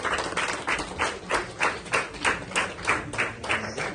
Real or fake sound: real